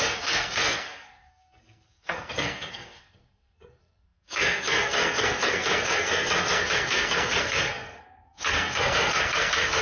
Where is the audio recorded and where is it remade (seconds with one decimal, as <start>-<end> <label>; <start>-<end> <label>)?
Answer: 0.0-9.8 remade